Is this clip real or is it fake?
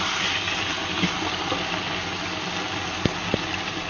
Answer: real